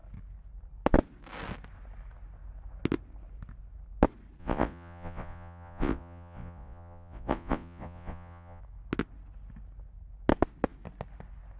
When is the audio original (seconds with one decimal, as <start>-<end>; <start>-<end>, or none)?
0.0-4.4; 8.6-11.6